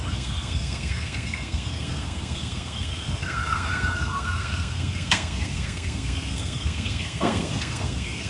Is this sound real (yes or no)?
no